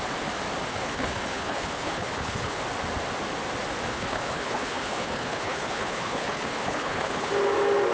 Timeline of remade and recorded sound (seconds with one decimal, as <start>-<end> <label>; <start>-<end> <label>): 0.0-0.7 recorded; 0.7-2.6 remade; 2.6-3.9 recorded; 3.9-7.3 remade; 7.3-7.9 recorded